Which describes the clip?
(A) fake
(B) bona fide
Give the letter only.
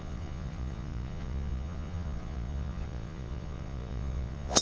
A